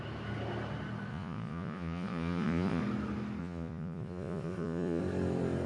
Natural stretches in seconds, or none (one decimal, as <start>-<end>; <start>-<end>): 0.0-1.1; 2.8-3.4; 5.0-5.7